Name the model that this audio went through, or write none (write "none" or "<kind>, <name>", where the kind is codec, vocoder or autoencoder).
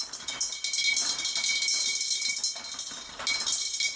none